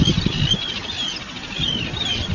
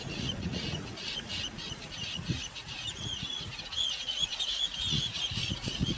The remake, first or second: second